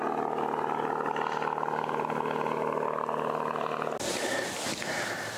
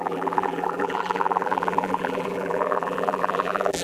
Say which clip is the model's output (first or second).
second